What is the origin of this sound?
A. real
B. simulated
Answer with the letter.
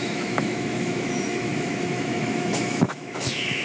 B